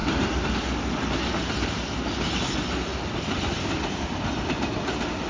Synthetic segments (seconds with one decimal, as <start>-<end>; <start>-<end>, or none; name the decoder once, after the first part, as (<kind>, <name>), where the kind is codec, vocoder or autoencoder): 0.0-0.5 (vocoder, BigVGAN v2); 2.9-4.8